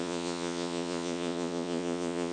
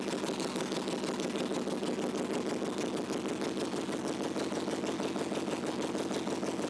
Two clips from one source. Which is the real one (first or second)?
second